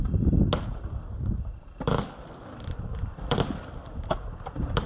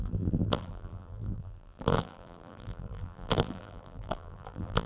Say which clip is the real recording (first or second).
first